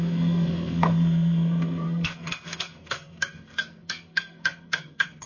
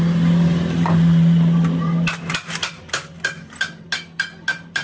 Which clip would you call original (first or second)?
second